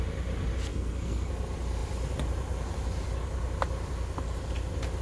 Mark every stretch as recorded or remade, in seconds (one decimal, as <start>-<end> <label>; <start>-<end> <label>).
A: 0.0-0.7 recorded; 0.7-1.3 remade; 1.3-5.0 recorded